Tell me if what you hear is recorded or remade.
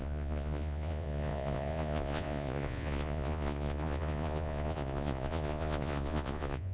remade